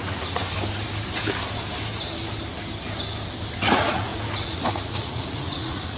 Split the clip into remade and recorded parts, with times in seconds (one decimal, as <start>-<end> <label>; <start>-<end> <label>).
0.0-0.4 remade; 0.4-3.6 recorded; 3.6-6.0 remade